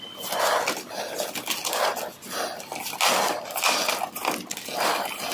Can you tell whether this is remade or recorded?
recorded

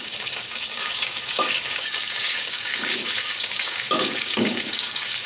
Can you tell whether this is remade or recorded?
remade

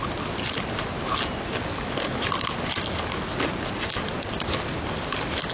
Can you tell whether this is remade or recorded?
recorded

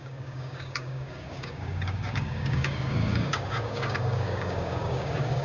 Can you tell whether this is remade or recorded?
remade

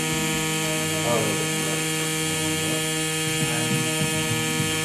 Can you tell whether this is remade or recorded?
recorded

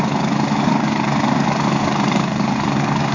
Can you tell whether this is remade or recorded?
remade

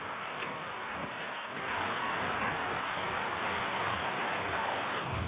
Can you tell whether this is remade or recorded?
remade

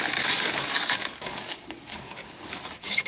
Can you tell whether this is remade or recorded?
remade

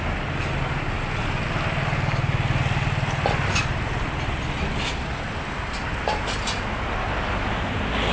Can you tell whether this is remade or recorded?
recorded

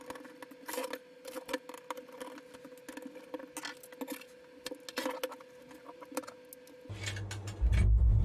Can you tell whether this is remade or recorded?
recorded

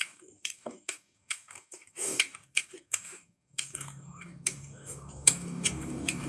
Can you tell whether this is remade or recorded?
remade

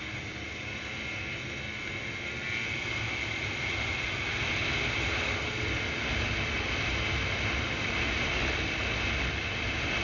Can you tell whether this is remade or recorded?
recorded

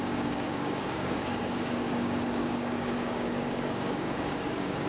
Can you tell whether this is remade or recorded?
remade